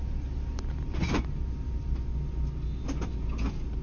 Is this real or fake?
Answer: real